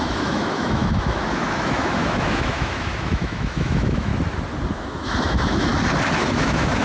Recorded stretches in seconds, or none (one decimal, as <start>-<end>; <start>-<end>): 4.1-4.7; 5.7-6.2